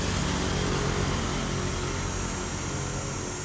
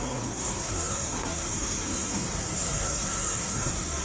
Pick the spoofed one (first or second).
second